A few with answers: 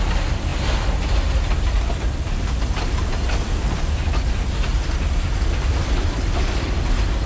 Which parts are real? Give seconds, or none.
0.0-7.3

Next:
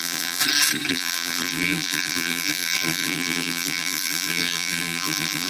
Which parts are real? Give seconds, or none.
0.4-0.9

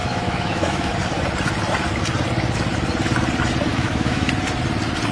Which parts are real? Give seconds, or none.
0.9-3.7; 4.3-5.1

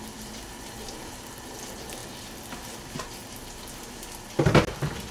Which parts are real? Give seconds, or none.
0.0-2.0; 2.6-5.1

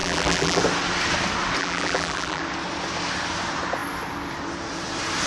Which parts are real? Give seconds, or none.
0.6-1.6; 2.4-5.3

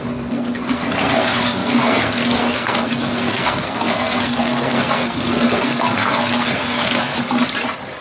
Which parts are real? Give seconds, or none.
7.1-8.0

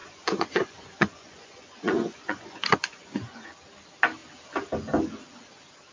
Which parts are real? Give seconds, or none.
3.5-5.9

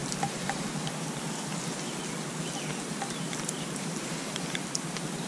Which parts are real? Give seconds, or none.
0.0-5.3